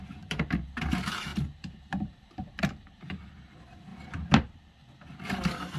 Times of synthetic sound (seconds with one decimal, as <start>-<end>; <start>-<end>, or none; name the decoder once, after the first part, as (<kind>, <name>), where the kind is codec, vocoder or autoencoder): 0.0-3.9 (vocoder, BigVGAN v2)